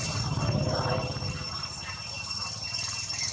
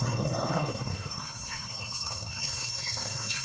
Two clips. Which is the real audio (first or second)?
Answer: first